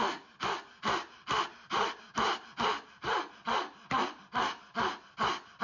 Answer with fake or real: real